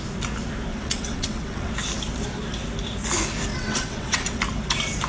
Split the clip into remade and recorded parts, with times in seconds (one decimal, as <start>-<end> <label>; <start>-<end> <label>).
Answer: 0.0-0.7 recorded; 0.7-1.7 remade; 1.7-3.5 recorded; 3.5-4.4 remade; 4.4-5.1 recorded